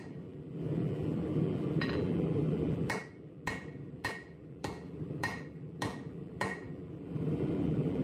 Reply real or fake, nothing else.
fake